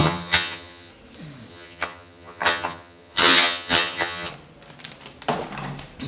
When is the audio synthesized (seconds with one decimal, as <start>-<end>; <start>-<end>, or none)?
0.0-0.9; 1.5-4.3